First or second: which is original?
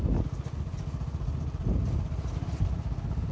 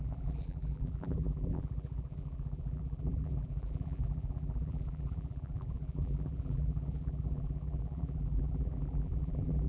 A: first